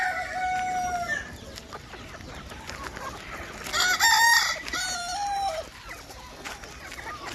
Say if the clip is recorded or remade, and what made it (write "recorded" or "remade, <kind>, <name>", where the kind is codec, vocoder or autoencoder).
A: recorded